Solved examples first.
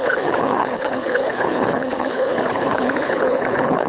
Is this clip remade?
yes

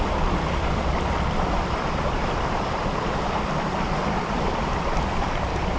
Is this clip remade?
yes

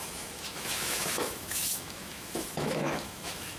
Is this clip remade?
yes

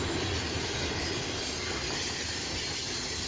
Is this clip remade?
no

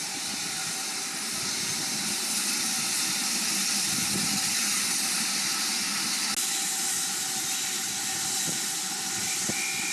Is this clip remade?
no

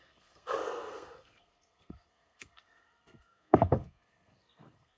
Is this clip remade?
yes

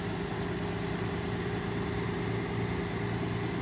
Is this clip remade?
no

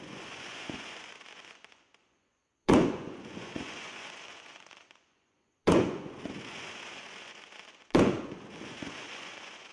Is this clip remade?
yes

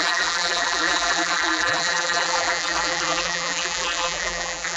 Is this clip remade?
yes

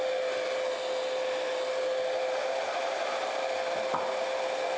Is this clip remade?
no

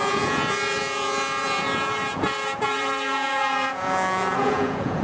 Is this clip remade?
yes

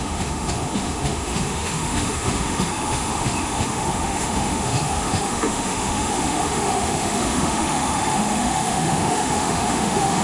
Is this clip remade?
yes